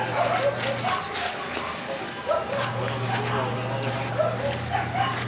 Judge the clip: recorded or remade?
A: recorded